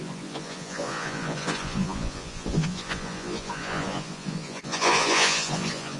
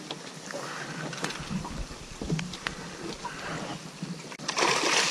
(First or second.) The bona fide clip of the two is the second